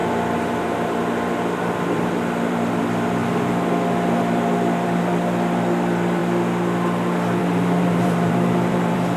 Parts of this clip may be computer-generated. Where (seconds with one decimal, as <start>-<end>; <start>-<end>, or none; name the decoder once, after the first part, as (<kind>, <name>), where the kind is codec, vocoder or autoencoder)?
1.6-3.2 (vocoder, BigVGAN v2); 4.2-6.2; 7.4-9.2

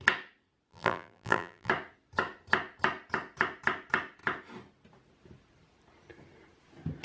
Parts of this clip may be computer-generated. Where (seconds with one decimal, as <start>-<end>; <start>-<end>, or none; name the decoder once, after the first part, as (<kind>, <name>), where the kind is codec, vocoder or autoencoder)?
0.7-1.7 (vocoder, BigVGAN v2)

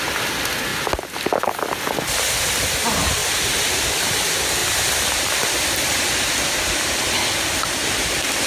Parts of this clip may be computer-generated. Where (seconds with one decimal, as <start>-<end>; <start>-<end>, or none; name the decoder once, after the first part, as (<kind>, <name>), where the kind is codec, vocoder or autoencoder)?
3.2-4.1 (vocoder, BigVGAN v2)

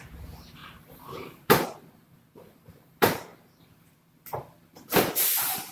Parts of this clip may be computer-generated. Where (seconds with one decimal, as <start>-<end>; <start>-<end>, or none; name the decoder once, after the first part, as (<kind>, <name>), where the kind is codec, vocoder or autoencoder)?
0.0-3.3 (vocoder, BigVGAN v2); 4.7-5.7